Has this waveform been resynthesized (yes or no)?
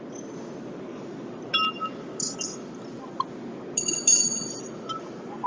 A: no